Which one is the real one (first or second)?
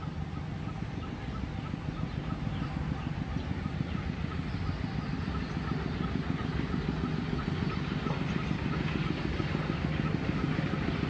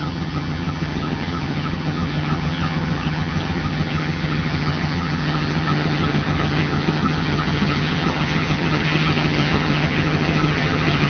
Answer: first